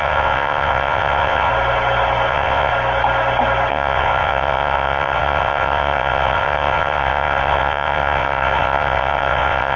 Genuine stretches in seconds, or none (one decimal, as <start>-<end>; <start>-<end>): 1.5-2.3; 2.7-3.7